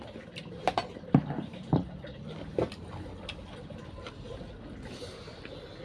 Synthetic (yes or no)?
no